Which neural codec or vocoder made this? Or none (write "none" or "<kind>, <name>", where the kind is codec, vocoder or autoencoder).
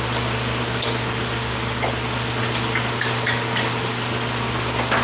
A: none